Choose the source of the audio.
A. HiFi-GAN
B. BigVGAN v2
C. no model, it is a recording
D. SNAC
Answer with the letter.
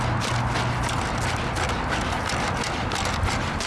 C